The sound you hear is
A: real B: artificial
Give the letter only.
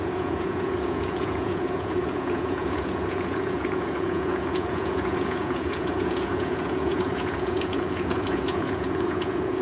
B